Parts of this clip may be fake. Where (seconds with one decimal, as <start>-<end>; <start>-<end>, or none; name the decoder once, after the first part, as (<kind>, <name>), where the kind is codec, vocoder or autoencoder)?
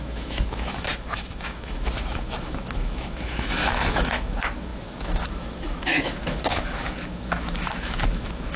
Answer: 0.0-8.6 (autoencoder, DAC-VAE)